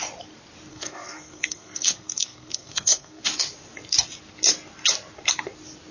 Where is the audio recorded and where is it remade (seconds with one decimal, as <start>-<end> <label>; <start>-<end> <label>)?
0.0-0.7 recorded; 0.7-3.2 remade; 3.2-5.9 recorded